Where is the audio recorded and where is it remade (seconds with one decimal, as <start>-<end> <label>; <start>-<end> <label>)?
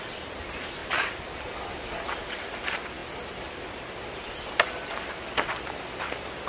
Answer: 0.0-0.8 recorded; 0.8-1.4 remade; 1.4-6.5 recorded